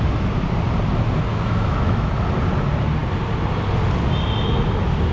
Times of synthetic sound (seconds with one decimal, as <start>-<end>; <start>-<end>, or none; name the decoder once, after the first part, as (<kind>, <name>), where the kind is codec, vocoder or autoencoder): 1.3-2.1 (autoencoder, DAC-VAE)